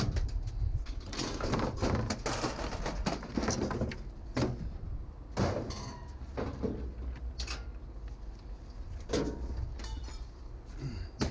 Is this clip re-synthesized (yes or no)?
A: no